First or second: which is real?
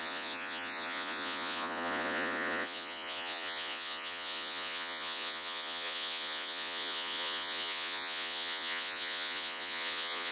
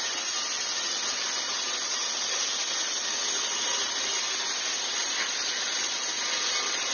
second